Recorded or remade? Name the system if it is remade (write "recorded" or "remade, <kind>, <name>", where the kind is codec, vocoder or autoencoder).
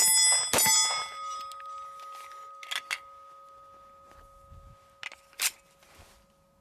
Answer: recorded